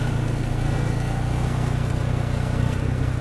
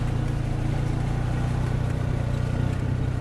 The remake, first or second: first